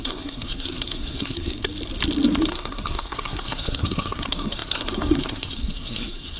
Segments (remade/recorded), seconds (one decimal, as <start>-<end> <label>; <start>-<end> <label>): 0.0-1.7 remade; 1.7-2.5 recorded; 2.5-6.4 remade